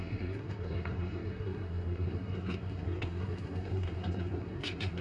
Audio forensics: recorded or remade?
remade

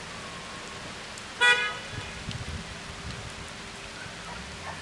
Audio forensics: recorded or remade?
recorded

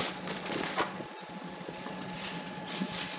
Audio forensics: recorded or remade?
remade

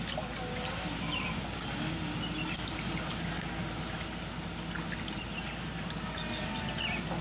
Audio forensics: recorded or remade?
recorded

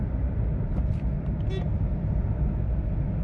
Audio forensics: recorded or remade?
recorded